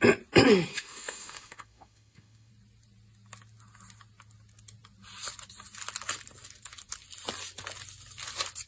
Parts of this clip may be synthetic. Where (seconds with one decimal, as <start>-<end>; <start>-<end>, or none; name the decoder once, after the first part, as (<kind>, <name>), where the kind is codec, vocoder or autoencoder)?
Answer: 0.7-2.5 (autoencoder, DAC-VAE)